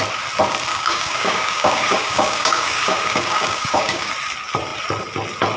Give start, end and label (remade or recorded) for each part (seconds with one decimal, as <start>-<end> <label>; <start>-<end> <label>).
0.0-0.7 recorded; 0.7-4.1 remade; 4.1-5.6 recorded